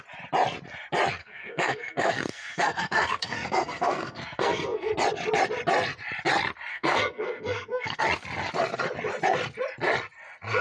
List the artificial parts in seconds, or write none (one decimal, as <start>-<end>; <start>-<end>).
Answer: 1.2-4.9; 6.7-8.0